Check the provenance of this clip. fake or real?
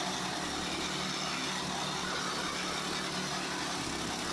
real